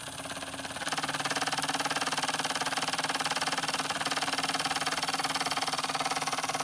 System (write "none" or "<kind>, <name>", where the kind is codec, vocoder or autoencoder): none